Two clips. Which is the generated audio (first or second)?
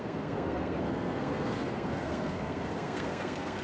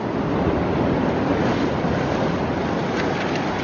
first